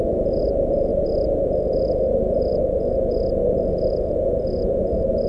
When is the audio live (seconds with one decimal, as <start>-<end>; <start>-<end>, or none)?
0.0-5.3

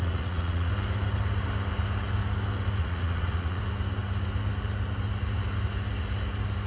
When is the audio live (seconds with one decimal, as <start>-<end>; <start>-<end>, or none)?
0.7-2.8; 3.6-6.7

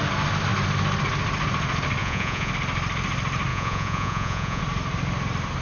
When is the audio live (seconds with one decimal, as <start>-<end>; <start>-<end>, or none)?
0.0-2.0; 2.5-3.5; 4.6-5.6

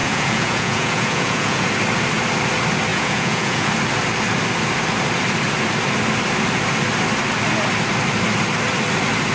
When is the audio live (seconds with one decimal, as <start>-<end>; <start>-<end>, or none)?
1.7-2.9; 3.7-9.3

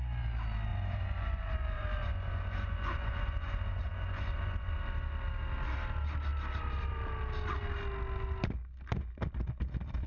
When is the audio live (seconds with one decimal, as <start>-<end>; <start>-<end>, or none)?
0.0-0.7; 4.7-10.1

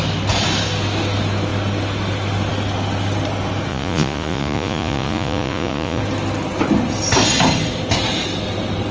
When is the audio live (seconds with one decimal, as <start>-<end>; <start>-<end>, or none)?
0.0-3.7; 6.0-8.9

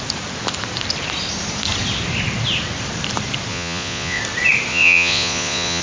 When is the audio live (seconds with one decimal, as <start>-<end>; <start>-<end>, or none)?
0.0-3.5; 4.2-4.7